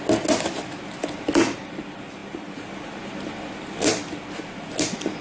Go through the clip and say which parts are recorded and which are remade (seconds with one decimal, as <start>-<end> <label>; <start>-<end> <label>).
0.0-5.2 recorded